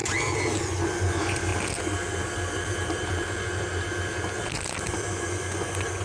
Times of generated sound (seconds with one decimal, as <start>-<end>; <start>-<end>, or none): 0.6-1.5; 5.1-6.0